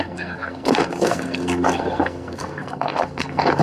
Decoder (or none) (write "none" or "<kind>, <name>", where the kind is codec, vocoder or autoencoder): codec, SNAC